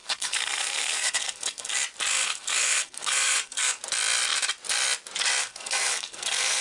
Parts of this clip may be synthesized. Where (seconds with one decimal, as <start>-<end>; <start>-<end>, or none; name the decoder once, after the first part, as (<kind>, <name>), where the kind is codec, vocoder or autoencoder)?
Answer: 0.0-1.7 (codec, SNAC); 2.1-3.8; 5.4-6.6